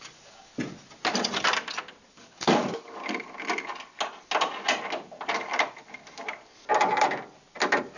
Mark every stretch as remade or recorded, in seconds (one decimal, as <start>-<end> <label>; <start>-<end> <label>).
0.0-0.5 remade; 0.5-2.1 recorded; 2.1-3.0 remade; 3.0-8.0 recorded